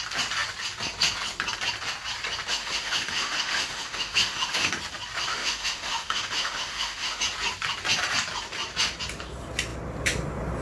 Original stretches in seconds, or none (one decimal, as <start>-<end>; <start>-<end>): 0.0-2.5; 4.7-5.3; 7.2-10.6